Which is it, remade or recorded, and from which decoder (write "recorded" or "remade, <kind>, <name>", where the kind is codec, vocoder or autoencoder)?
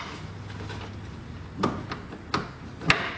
recorded